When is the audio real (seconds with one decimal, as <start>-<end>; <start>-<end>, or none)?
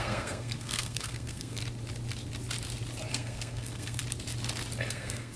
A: 1.6-3.1; 4.0-4.9